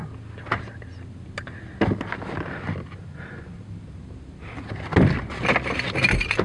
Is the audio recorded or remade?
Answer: recorded